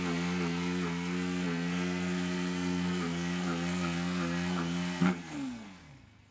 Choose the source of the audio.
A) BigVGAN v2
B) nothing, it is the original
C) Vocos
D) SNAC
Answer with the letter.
D